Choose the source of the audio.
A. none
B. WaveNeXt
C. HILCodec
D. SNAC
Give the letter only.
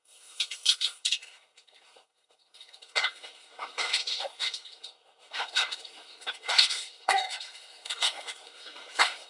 D